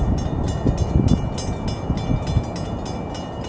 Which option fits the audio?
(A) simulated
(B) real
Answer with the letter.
B